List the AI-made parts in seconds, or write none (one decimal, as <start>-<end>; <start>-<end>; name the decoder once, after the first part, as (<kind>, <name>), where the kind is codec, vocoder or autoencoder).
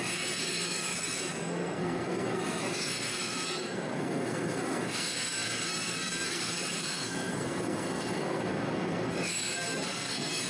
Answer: 0.0-10.5 (codec, SNAC)